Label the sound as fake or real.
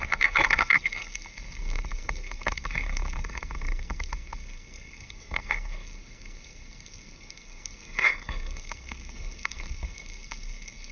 fake